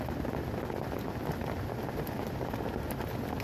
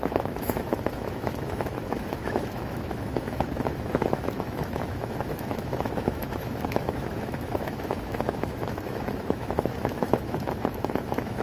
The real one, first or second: first